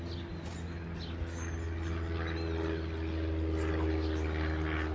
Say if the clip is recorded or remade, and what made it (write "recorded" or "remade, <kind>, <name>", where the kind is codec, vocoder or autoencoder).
recorded